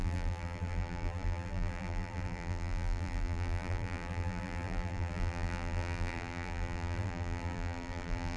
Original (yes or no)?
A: no